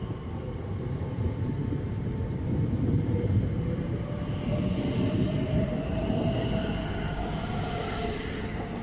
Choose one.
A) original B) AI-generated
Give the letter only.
A